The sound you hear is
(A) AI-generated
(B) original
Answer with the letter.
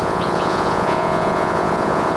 A